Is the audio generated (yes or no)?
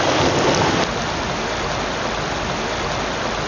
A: no